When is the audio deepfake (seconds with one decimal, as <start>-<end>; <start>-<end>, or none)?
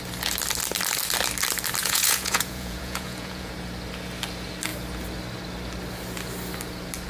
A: 1.8-3.5